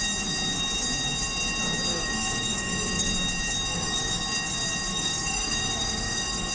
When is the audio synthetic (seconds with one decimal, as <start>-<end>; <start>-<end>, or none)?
1.9-3.1; 3.7-4.2; 4.9-6.5

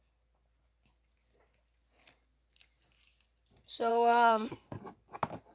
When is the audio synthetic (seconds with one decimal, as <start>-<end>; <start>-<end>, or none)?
3.9-4.8

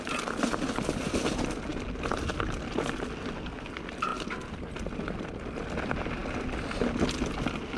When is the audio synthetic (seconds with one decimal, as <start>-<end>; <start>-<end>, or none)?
none

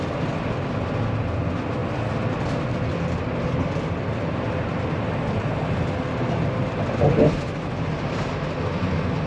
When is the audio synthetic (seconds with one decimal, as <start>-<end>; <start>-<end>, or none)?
none

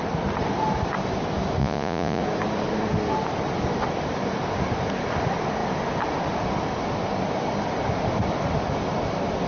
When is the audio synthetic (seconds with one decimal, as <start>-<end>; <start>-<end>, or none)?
1.6-2.2